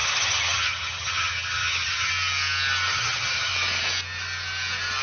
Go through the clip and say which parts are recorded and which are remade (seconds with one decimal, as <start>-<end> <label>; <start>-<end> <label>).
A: 0.0-2.1 remade; 2.1-2.9 recorded; 2.9-3.5 remade; 3.5-5.0 recorded